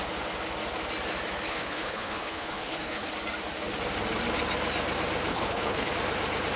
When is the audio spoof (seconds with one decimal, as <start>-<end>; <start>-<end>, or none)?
1.5-3.1; 5.3-5.9